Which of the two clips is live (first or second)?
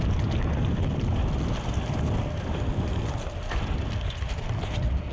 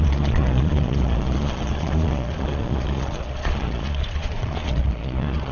first